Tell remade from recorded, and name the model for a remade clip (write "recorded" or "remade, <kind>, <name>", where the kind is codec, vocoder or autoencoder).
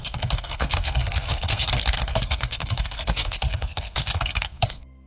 remade, codec, SNAC